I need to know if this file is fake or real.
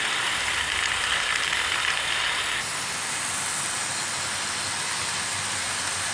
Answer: real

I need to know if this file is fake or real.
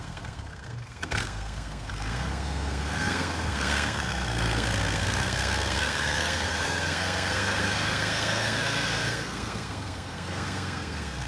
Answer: fake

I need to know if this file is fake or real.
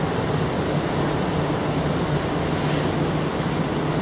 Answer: real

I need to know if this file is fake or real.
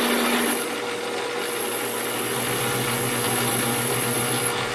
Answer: real